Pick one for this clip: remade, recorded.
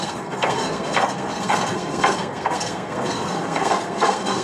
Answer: remade